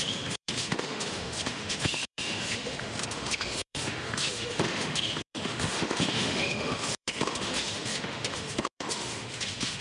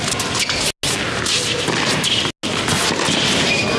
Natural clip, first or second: second